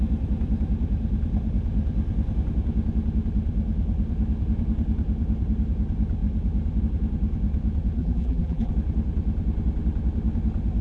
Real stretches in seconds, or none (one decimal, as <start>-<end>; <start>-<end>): 0.0-8.0; 8.7-10.8